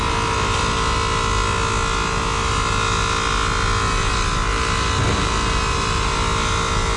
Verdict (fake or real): real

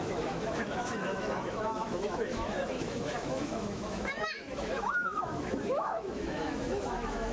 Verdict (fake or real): fake